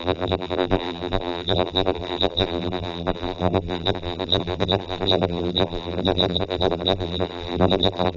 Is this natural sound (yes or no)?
no